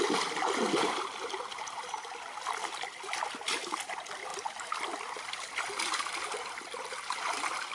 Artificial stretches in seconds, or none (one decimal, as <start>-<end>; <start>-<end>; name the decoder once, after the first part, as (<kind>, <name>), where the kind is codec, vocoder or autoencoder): none